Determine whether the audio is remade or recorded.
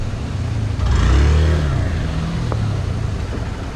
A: recorded